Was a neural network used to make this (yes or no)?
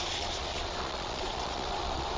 yes